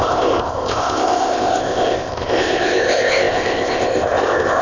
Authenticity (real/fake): fake